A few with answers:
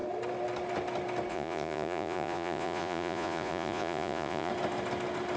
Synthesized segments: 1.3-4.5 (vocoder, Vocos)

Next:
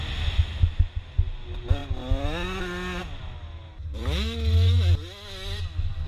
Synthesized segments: none

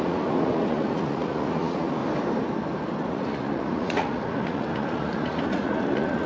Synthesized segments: 0.0-2.0 (vocoder, Vocos); 3.1-6.3

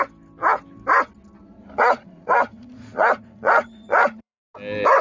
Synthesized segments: 1.4-4.4 (vocoder, Vocos)

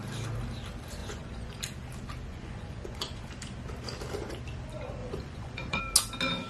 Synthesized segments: 1.0-1.6 (vocoder, Vocos); 2.3-3.3; 5.0-5.8